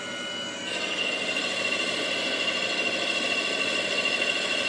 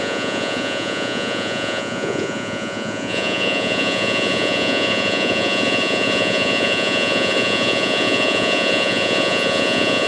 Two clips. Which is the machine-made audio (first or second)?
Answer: second